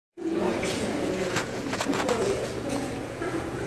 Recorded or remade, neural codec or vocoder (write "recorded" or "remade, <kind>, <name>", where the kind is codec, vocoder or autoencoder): remade, vocoder, Vocos